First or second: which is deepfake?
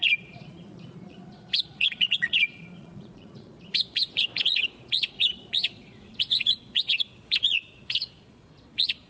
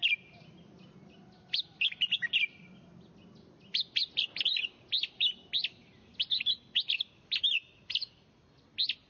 first